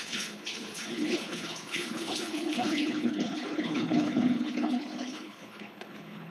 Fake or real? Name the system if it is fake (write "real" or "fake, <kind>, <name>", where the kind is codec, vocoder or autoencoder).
fake, codec, HILCodec